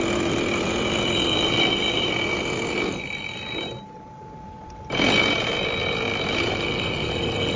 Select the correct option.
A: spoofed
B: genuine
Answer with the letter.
B